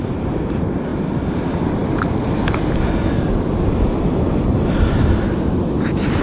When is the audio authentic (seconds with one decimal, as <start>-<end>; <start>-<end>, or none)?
0.0-6.2